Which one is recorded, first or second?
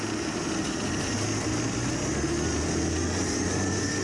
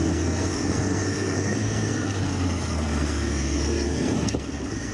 first